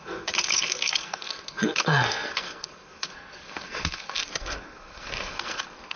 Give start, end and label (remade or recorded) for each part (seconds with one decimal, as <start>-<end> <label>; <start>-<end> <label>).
0.0-6.0 remade